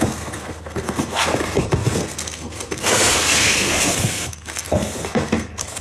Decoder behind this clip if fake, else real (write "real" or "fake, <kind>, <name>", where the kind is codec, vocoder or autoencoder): fake, codec, SNAC